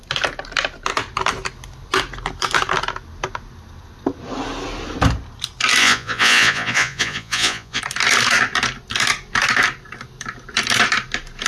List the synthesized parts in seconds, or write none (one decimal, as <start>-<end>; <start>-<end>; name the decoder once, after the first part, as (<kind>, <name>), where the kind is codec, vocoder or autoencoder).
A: 5.8-7.8 (vocoder, Vocos)